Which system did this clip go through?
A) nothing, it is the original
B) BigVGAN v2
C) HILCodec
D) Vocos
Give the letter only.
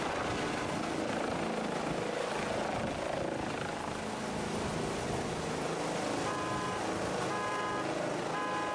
A